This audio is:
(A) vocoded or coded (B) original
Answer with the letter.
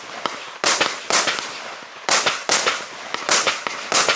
B